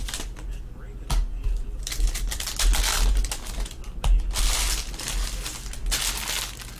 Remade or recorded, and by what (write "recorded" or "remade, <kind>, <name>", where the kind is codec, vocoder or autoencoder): recorded